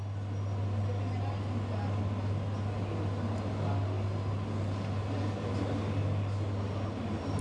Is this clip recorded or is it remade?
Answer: recorded